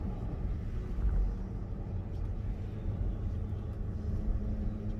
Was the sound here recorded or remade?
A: recorded